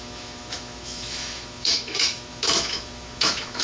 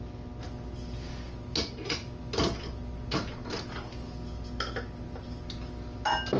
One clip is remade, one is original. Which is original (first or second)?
second